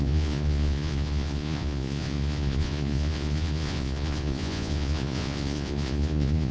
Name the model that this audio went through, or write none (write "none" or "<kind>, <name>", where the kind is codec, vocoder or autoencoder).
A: vocoder, Vocos